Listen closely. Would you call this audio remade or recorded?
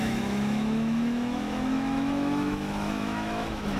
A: remade